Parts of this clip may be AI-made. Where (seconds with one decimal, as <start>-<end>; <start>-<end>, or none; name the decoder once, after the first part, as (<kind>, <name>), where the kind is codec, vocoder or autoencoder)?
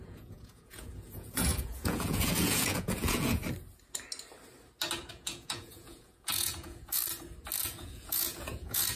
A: 0.0-3.4 (vocoder, Vocos); 5.1-7.0; 7.6-9.0